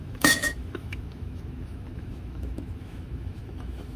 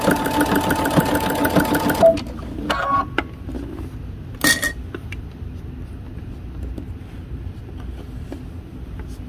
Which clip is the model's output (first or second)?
first